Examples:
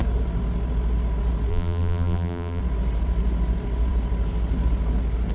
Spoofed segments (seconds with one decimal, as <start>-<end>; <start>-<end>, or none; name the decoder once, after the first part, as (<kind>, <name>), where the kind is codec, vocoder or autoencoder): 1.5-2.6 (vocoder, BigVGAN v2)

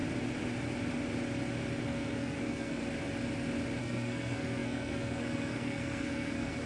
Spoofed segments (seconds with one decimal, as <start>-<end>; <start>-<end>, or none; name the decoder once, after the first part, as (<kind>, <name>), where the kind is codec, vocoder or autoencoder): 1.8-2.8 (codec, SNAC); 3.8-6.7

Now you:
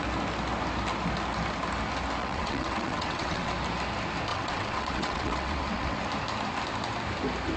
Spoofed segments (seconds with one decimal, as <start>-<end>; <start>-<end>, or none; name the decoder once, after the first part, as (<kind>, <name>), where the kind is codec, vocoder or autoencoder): 2.2-3.5 (vocoder, WaveNeXt); 4.3-6.0

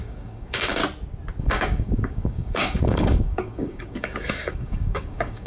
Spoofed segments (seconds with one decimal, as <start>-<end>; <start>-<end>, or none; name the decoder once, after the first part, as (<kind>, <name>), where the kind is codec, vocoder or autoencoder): 0.0-0.8 (codec, DAC); 1.4-5.5